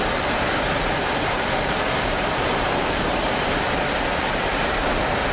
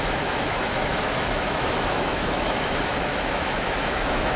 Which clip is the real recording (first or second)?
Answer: first